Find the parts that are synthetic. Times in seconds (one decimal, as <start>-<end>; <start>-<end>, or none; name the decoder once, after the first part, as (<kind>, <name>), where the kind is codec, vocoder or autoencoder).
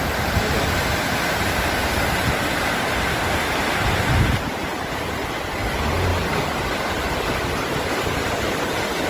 none